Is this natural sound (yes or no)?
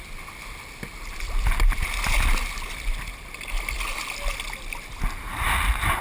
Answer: yes